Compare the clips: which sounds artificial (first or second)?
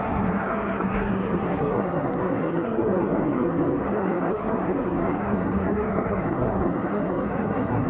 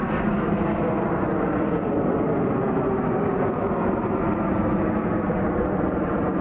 first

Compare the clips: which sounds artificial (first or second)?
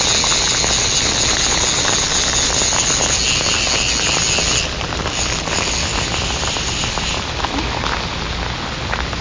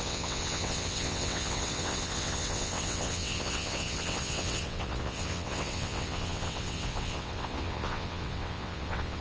second